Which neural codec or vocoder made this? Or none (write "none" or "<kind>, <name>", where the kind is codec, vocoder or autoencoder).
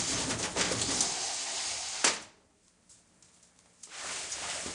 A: none